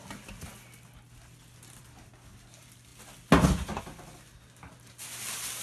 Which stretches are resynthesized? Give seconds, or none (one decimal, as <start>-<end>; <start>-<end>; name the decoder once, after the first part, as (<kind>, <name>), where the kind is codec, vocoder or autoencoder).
none